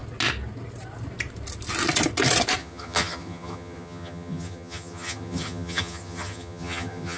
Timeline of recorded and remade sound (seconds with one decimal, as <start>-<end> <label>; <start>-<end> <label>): 0.0-2.6 recorded; 2.6-7.2 remade